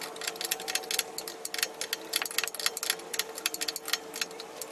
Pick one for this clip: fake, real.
real